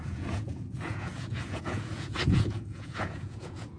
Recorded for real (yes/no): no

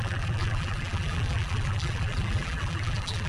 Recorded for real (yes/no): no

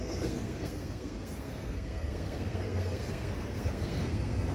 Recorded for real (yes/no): no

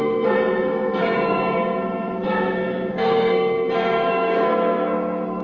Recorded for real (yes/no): no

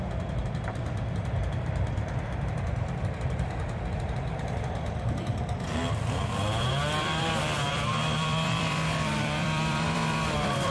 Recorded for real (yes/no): no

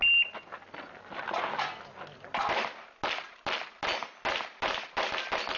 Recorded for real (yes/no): yes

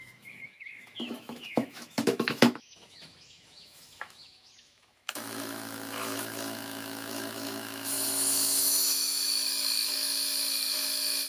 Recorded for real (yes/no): no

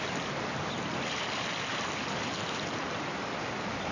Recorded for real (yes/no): yes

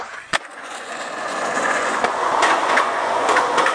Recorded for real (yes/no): no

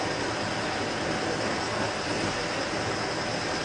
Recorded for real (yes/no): yes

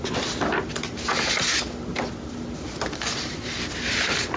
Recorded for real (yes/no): yes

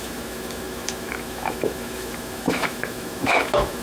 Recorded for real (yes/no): no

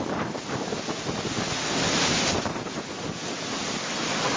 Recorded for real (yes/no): yes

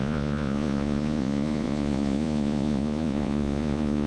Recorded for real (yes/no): no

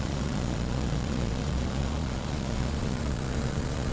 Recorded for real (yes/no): no